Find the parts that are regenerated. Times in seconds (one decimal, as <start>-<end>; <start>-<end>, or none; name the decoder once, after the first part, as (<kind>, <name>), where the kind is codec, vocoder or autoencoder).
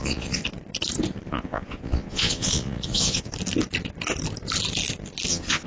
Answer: 0.0-0.4 (vocoder, Vocos); 1.3-3.3; 5.3-5.7